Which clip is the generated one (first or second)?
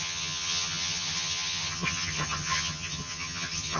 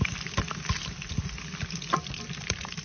first